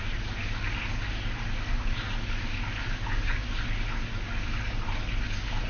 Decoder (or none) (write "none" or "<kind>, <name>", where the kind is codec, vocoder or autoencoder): none